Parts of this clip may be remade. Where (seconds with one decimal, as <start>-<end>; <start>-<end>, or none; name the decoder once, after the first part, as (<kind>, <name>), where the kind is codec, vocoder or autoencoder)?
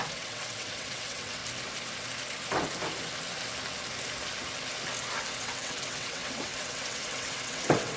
0.0-1.4 (vocoder, WaveNeXt); 5.4-8.0